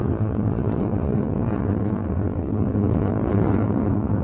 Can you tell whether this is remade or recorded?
remade